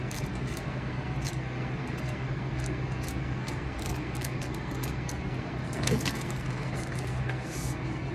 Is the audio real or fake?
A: fake